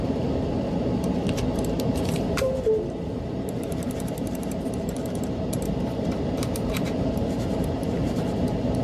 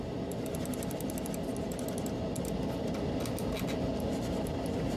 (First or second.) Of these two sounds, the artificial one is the first